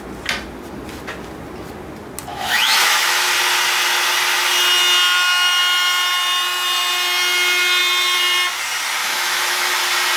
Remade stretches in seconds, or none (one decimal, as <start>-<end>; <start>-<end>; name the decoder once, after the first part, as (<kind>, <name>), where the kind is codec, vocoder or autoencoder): 2.3-3.3 (autoencoder, DAC-VAE); 9.0-9.7